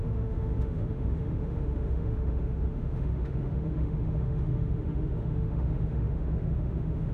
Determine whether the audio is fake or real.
fake